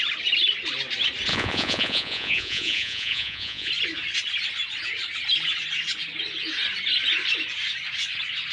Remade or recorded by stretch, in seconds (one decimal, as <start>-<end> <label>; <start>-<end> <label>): 0.0-1.3 recorded; 1.3-3.7 remade; 3.7-8.5 recorded